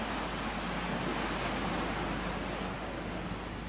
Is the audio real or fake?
real